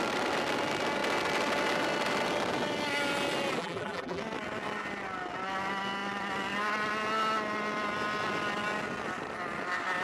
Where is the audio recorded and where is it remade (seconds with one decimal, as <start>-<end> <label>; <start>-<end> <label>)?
0.0-3.6 recorded; 3.6-4.2 remade; 4.2-10.0 recorded